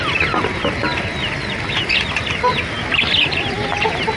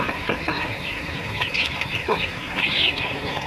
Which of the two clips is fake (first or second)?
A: second